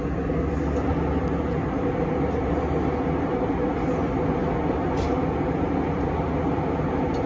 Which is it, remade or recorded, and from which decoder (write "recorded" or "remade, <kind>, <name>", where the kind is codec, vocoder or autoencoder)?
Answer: recorded